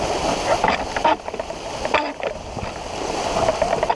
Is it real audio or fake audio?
real